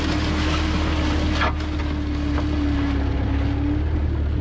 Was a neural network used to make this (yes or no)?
no